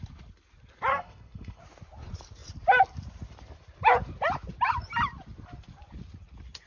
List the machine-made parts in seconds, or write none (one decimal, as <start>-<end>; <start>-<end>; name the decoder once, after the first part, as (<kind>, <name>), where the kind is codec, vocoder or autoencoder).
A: 0.9-1.6 (codec, SNAC)